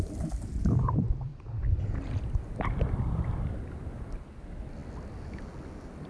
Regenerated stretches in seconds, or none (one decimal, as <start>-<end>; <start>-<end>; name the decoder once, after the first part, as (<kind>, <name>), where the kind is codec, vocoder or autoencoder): none